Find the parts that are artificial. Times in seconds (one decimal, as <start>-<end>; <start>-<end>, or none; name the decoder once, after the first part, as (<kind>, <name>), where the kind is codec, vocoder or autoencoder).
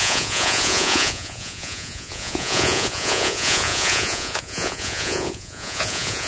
0.0-6.3 (vocoder, Vocos)